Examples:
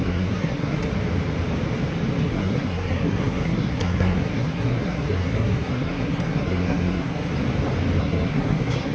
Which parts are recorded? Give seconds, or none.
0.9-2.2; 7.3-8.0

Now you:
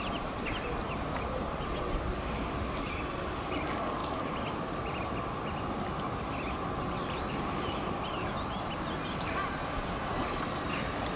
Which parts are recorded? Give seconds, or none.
0.0-11.2

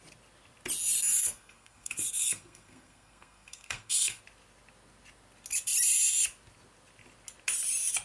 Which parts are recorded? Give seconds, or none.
0.0-1.1; 4.2-8.0

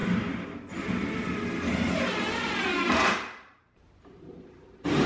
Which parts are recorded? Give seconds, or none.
0.0-3.1

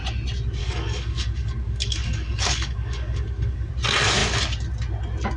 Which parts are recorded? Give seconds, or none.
0.0-0.6; 3.7-5.4

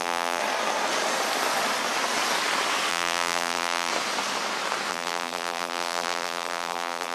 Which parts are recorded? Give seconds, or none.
0.4-2.9; 3.9-4.9

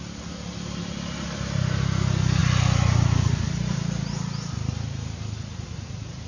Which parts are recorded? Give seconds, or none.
0.0-6.3